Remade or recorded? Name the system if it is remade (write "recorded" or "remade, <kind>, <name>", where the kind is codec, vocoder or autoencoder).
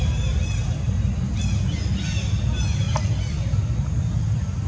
recorded